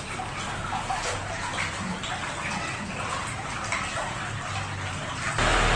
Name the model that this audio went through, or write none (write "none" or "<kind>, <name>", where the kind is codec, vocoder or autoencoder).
none